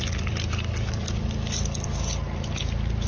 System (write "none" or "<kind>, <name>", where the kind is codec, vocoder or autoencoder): none